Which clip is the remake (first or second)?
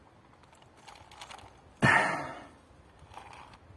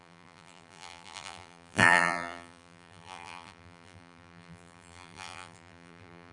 second